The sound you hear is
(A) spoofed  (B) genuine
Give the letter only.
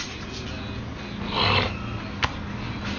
B